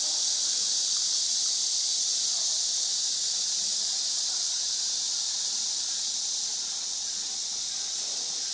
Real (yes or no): yes